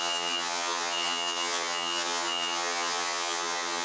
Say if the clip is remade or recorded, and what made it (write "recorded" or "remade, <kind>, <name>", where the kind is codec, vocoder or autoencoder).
remade, vocoder, HiFi-GAN